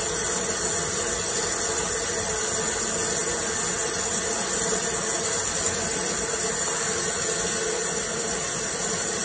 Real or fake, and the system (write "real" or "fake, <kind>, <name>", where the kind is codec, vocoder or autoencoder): real